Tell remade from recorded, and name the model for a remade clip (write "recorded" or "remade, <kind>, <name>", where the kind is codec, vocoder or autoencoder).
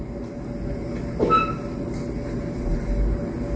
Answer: recorded